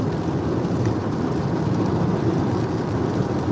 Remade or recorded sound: remade